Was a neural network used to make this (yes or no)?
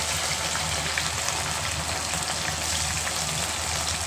no